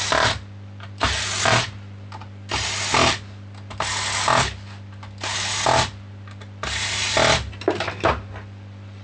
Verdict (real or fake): real